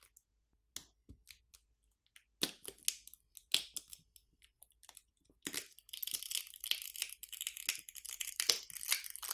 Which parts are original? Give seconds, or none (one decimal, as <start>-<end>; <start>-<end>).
0.0-3.9; 8.5-9.3